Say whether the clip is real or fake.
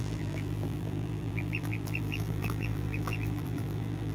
fake